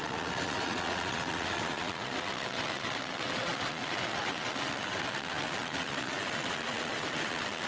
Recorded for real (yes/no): no